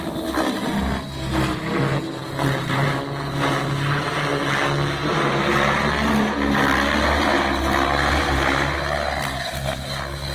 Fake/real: real